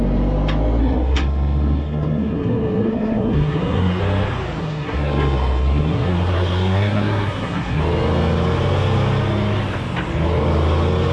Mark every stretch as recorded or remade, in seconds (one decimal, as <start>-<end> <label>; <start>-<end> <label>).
0.0-0.8 recorded; 0.8-4.0 remade; 4.0-4.6 recorded; 4.6-7.8 remade; 7.8-11.1 recorded

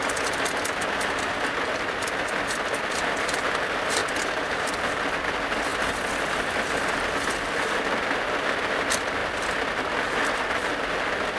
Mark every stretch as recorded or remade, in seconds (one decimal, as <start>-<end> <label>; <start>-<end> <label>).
0.0-11.4 recorded

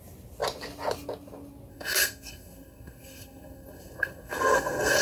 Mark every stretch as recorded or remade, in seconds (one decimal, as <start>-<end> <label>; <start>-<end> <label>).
0.0-1.7 recorded; 1.7-5.0 remade

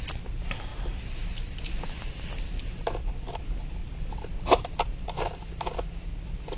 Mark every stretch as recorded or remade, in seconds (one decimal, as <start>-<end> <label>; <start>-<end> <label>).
0.0-0.7 recorded; 0.7-3.4 remade; 3.4-3.8 recorded; 3.8-5.8 remade; 5.8-6.6 recorded